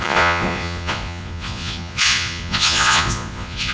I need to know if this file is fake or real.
fake